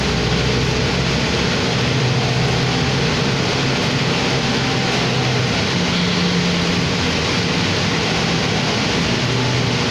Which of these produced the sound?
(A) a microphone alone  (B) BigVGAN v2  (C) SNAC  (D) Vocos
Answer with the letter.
A